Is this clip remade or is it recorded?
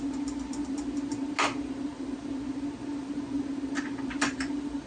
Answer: recorded